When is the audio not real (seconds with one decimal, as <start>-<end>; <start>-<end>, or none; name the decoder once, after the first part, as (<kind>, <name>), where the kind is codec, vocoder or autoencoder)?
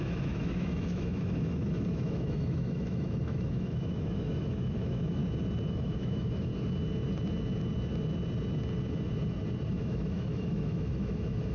0.0-5.2 (autoencoder, DAC-VAE); 5.7-6.5; 9.7-11.5